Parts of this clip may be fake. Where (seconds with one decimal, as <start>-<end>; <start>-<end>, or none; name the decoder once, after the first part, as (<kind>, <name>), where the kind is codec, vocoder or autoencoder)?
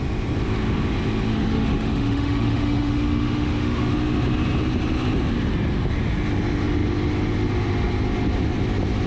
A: 1.3-3.9 (autoencoder, DAC-VAE)